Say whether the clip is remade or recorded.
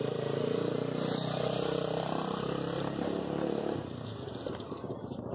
remade